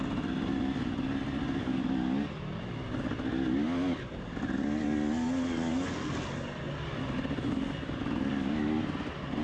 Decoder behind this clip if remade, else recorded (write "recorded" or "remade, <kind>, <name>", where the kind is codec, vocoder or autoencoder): recorded